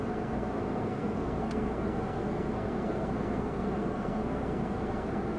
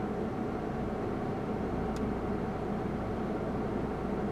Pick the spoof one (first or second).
first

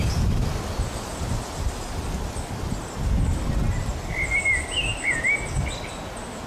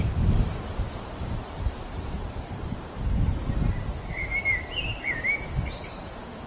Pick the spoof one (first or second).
second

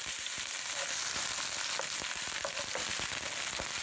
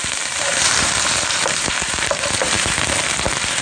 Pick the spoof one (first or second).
second